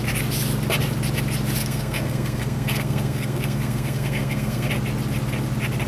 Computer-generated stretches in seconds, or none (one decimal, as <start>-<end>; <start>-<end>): 1.6-4.7